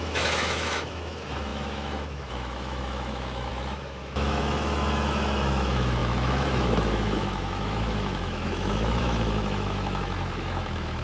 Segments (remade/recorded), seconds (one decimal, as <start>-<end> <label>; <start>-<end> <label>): 0.0-11.0 remade